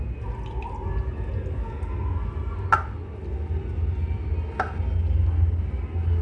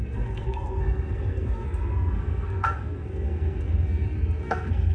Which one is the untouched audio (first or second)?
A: first